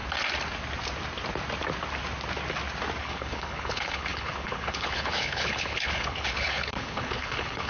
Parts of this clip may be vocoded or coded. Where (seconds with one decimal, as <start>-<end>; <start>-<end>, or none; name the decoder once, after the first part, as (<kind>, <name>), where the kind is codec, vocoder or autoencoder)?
3.0-7.7 (codec, HILCodec)